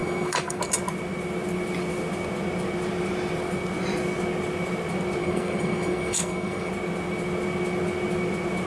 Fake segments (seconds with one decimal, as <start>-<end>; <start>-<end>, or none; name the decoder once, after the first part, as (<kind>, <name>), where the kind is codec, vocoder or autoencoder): 0.0-0.6 (codec, SNAC); 5.2-6.7